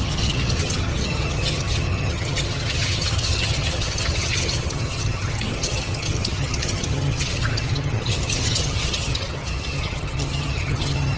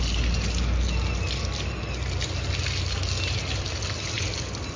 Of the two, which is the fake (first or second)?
first